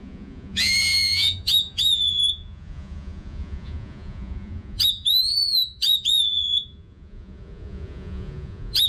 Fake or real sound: fake